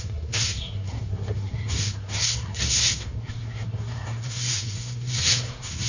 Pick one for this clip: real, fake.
fake